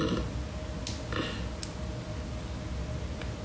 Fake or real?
real